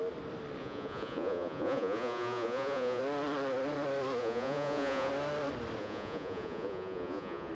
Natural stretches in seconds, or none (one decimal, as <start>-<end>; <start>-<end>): 0.0-0.6; 3.0-4.2; 5.1-5.8